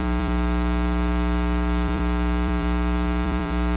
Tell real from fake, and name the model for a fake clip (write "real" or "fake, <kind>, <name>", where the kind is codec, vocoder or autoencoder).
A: fake, vocoder, BigVGAN v2